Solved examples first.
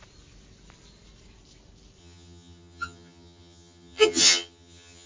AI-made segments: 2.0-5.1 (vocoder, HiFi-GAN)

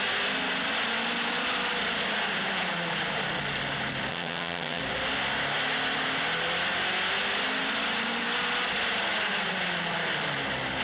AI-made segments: 4.1-4.8 (vocoder, HiFi-GAN)

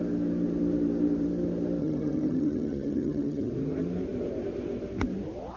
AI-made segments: 1.8-3.5 (vocoder, HiFi-GAN)

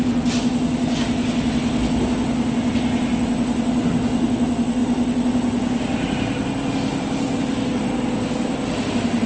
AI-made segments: none